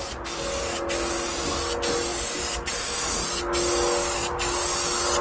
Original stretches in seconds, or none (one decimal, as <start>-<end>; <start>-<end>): 0.0-5.2